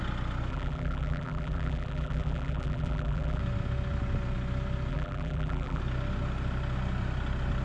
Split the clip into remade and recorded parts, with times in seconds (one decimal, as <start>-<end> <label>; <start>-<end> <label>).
0.0-0.5 recorded; 0.5-3.4 remade; 3.4-4.9 recorded; 4.9-5.8 remade; 5.8-7.6 recorded